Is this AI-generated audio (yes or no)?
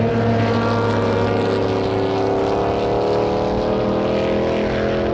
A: no